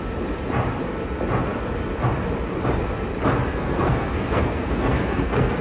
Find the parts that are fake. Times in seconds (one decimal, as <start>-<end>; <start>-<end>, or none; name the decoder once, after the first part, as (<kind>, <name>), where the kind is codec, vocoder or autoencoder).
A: 3.5-5.6 (codec, SNAC)

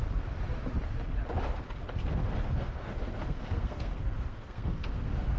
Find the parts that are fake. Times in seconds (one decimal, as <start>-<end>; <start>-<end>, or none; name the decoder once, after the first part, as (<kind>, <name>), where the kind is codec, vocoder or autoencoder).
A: 2.0-5.4 (codec, SNAC)

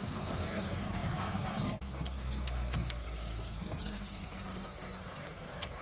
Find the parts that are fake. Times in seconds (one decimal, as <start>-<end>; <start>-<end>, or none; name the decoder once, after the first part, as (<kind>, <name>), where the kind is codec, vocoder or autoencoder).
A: 0.0-5.8 (codec, SNAC)

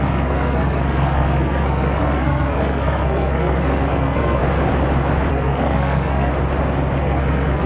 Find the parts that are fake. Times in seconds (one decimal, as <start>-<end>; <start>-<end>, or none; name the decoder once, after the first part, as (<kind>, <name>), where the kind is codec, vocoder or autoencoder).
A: 0.0-4.4 (codec, SNAC); 5.3-6.3; 7.0-7.7

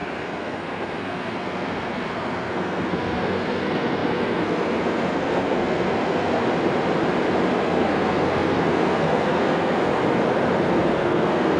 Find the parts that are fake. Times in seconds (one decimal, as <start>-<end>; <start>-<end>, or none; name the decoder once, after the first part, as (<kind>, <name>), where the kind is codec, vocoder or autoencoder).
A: 0.0-6.4 (codec, SNAC); 7.6-9.9; 10.7-11.6

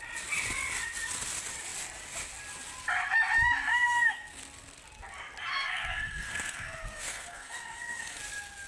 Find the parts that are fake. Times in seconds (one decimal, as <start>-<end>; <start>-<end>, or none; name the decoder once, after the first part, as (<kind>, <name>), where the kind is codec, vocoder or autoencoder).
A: 3.7-4.4 (codec, SNAC); 5.5-8.2

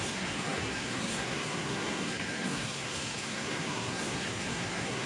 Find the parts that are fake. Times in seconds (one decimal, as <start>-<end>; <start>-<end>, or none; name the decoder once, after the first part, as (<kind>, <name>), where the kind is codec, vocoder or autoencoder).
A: 0.0-5.1 (codec, SNAC)